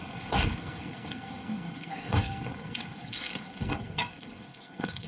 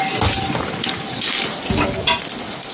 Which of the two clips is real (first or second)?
second